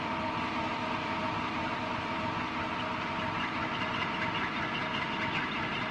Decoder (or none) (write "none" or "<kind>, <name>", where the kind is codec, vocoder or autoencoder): none